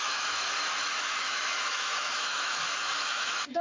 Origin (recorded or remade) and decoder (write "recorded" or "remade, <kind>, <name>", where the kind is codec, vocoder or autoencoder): remade, autoencoder, DAC-VAE